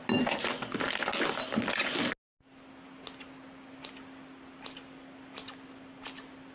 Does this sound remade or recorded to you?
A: recorded